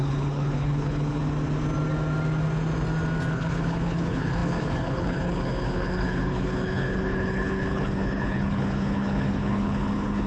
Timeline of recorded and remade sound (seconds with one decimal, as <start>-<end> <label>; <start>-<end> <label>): 0.0-1.2 remade; 1.2-3.3 recorded; 3.3-10.3 remade